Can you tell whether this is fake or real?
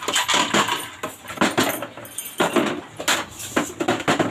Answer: real